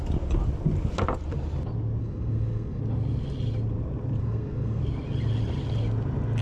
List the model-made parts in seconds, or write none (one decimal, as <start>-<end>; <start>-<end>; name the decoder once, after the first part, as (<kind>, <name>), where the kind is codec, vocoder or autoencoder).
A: 2.0-2.8 (codec, SNAC); 4.2-4.8